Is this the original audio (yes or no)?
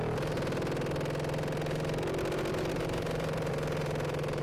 yes